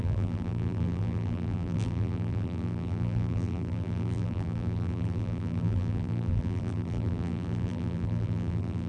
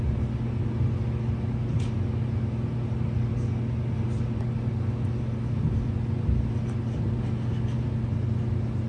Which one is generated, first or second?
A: first